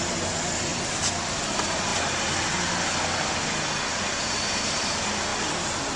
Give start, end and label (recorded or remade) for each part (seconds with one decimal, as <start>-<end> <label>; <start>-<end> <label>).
0.0-6.0 recorded